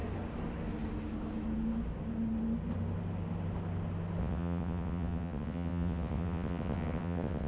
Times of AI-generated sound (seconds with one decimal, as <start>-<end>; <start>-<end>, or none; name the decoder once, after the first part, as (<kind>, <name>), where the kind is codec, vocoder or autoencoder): 4.2-7.5 (vocoder, WaveNeXt)